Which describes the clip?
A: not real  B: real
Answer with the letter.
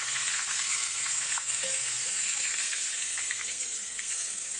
A